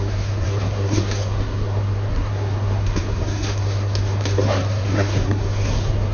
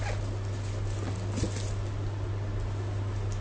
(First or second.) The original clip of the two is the second